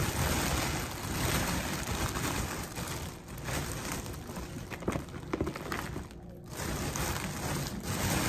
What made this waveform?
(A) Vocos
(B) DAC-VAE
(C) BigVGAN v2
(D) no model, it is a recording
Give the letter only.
D